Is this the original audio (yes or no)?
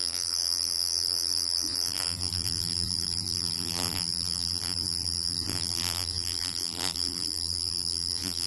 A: no